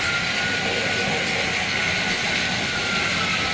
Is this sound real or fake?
real